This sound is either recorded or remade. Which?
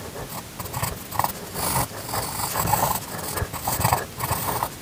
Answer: recorded